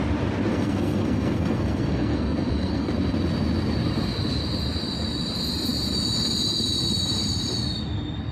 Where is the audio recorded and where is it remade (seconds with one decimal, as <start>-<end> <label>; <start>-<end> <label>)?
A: 0.0-0.5 recorded; 0.5-2.9 remade; 2.9-8.3 recorded